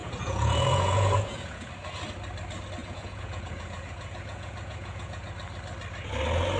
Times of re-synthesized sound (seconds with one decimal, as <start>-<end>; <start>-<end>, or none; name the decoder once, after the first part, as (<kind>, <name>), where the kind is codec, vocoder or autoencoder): 0.0-1.7 (vocoder, Vocos); 2.8-5.3